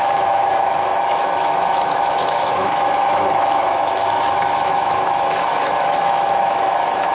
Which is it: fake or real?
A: fake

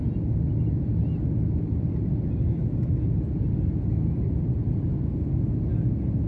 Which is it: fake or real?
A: real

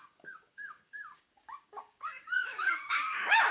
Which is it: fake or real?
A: fake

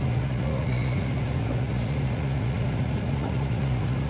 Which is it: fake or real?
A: fake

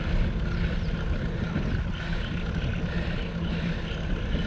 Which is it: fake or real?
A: real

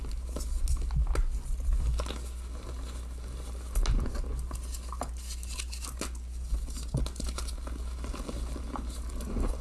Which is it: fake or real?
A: real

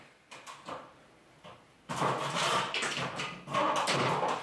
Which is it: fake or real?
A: real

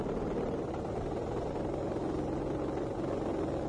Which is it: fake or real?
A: real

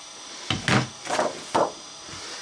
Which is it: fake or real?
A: real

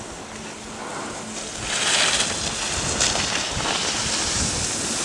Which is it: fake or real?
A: real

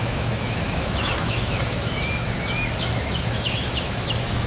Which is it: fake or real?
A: fake